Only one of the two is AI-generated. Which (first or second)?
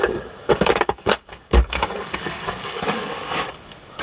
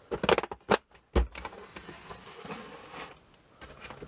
first